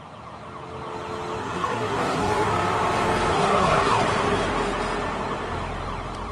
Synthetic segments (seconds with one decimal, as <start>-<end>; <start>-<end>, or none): 1.4-2.5; 3.3-4.0